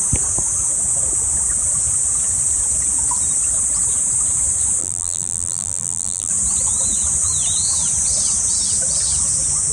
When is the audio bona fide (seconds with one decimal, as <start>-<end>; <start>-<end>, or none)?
0.0-4.8; 6.3-9.7